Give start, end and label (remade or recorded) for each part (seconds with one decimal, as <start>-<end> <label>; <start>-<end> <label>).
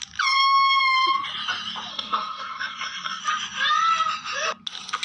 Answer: 0.0-1.9 recorded; 1.9-3.2 remade; 3.2-5.0 recorded